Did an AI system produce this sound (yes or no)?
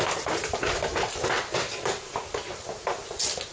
no